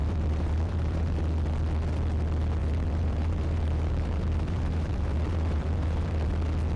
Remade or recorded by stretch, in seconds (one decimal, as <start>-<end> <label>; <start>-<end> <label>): 0.0-1.2 remade; 1.2-2.6 recorded; 2.6-6.3 remade; 6.3-6.8 recorded

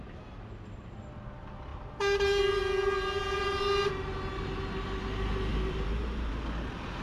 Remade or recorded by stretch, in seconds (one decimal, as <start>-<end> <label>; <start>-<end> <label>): 0.0-1.7 recorded; 1.7-3.9 remade; 3.9-5.5 recorded; 5.5-6.3 remade; 6.3-7.0 recorded

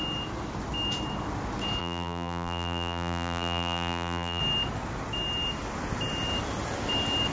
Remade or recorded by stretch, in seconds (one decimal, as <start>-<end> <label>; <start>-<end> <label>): 0.0-1.8 recorded; 1.8-4.4 remade; 4.4-7.3 recorded

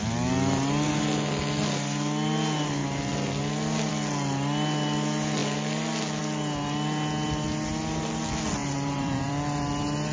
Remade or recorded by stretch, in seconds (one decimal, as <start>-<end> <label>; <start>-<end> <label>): 0.0-8.6 recorded; 8.6-9.3 remade; 9.3-10.1 recorded

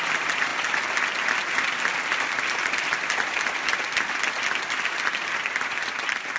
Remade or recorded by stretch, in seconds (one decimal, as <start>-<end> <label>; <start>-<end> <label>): 0.0-6.4 recorded